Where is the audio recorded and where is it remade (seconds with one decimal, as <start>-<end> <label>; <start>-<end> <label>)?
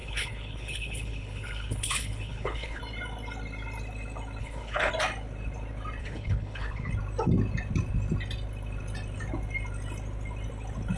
0.0-2.8 remade; 2.8-4.4 recorded; 4.4-4.9 remade; 4.9-6.0 recorded; 6.0-6.9 remade; 6.9-11.0 recorded